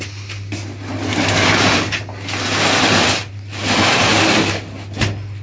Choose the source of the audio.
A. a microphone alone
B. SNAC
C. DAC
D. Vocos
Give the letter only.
A